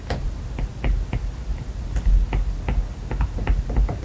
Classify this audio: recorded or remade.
recorded